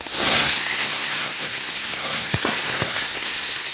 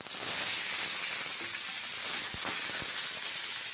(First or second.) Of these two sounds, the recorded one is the second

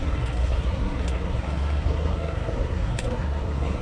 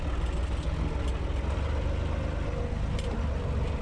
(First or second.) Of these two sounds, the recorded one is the second